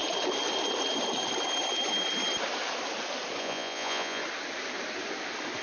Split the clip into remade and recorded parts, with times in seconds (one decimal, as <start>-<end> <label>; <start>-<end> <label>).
0.0-3.4 recorded; 3.4-4.2 remade; 4.2-5.6 recorded